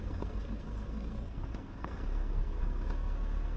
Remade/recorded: remade